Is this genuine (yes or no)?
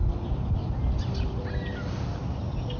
yes